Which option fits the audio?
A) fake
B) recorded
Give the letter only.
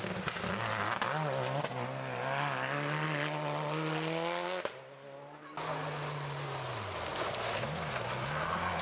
B